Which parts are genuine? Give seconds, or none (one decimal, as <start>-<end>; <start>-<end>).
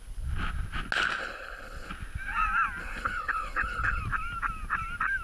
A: 0.0-1.2; 1.9-2.8; 4.0-5.2